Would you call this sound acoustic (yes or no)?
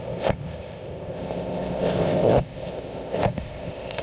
no